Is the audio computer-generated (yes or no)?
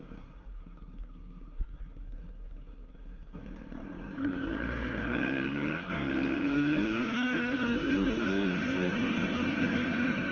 yes